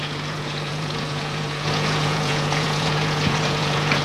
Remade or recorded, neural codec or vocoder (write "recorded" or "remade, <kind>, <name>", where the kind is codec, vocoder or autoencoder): remade, vocoder, Vocos